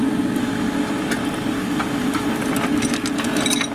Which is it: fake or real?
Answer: real